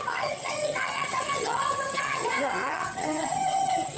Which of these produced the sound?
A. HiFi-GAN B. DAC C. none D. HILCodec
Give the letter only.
A